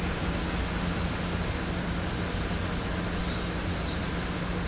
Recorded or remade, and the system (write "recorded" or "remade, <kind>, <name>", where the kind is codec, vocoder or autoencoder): recorded